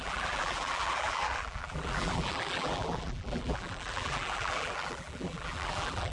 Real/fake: fake